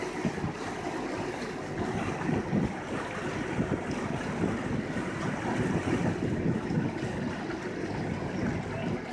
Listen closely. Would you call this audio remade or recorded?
recorded